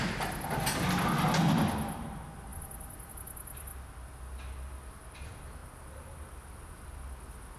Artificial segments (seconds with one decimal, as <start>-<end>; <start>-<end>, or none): 5.6-6.9